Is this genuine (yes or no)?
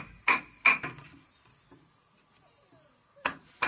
yes